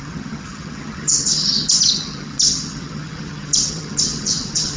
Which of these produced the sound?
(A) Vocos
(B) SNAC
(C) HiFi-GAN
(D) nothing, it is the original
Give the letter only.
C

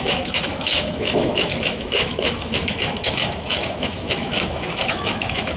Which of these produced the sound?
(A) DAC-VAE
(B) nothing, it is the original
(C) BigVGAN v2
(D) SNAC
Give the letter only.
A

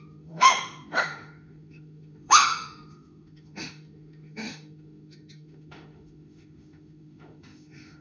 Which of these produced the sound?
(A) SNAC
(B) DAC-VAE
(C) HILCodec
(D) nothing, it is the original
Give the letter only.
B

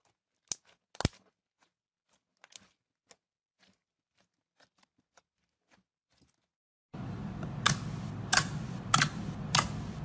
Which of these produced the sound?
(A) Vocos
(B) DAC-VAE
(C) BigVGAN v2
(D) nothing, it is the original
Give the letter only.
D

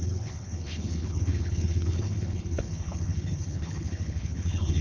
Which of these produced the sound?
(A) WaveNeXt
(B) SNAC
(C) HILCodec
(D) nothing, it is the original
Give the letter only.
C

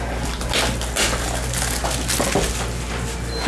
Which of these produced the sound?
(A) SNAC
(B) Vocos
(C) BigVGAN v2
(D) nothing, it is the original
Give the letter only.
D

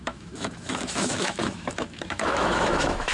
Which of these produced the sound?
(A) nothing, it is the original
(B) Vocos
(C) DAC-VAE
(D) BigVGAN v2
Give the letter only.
C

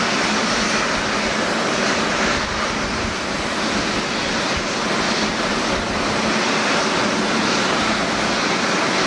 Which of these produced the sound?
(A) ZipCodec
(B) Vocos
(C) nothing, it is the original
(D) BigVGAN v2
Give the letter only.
C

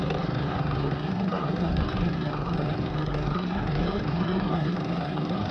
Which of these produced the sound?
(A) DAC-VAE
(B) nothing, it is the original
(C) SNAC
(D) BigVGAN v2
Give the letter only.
C